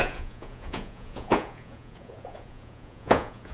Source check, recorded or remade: remade